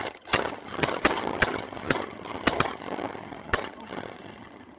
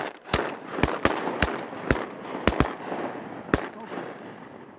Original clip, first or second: second